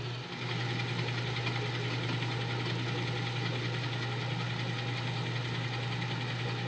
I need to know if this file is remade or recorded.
recorded